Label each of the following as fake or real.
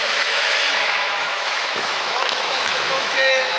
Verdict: fake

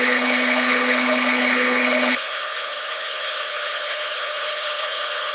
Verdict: fake